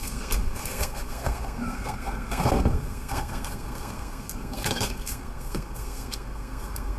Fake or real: fake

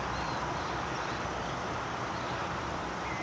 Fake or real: fake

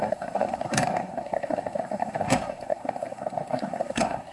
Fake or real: fake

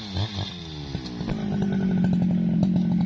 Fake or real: real